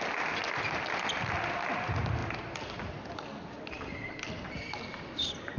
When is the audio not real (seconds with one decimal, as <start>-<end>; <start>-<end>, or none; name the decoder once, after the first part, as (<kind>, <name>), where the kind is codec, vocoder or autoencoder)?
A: none